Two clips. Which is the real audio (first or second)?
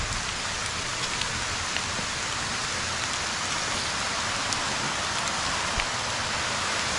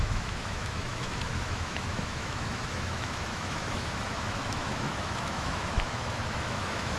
first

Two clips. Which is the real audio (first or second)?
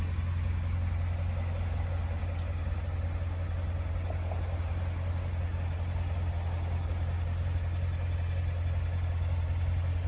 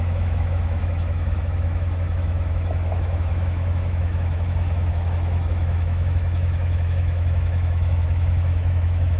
first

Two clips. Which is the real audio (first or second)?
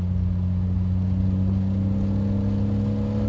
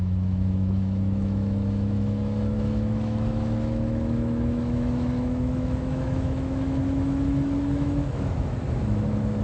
first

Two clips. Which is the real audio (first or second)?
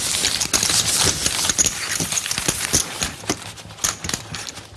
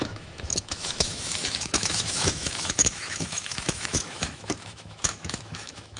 first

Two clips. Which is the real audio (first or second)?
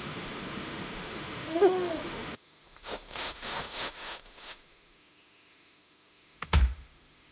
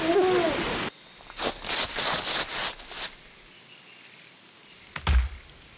second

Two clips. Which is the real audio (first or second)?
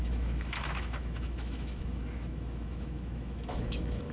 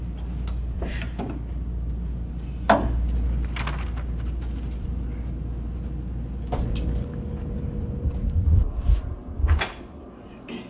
second